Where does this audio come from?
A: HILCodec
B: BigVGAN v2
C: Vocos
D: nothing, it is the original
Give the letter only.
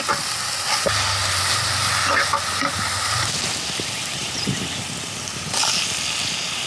D